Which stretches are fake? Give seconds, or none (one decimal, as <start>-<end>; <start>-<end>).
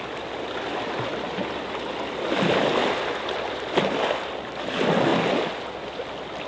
none